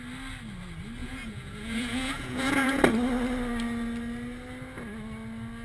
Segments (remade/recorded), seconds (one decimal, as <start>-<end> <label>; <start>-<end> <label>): 0.0-1.0 recorded; 1.0-2.8 remade; 2.8-5.6 recorded